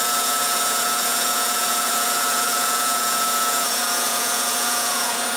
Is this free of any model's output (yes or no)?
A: no